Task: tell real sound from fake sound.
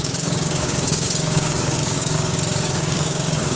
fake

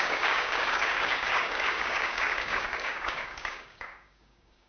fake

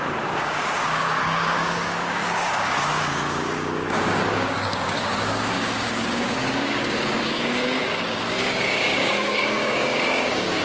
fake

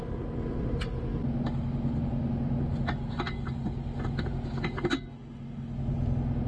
real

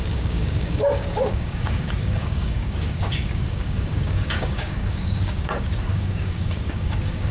fake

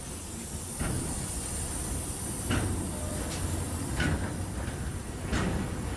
real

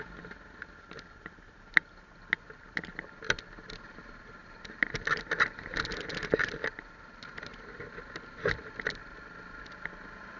real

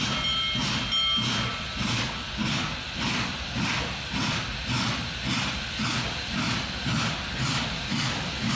real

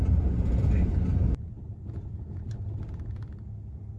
real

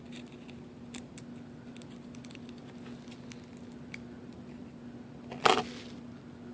real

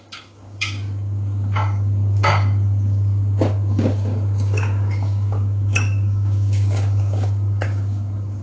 fake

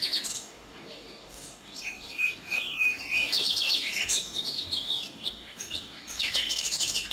fake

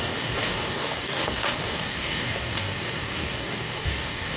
fake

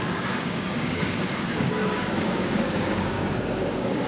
fake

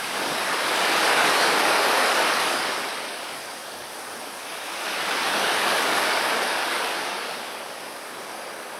fake